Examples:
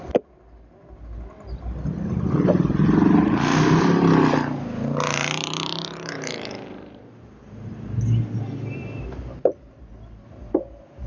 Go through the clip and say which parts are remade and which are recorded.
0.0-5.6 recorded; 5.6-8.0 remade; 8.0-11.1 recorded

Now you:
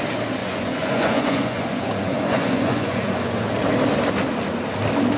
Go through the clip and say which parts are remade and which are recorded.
0.0-0.4 recorded; 0.4-3.5 remade; 3.5-5.2 recorded

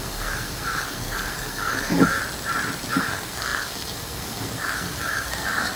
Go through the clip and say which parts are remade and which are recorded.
0.0-2.2 remade; 2.2-2.9 recorded; 2.9-5.8 remade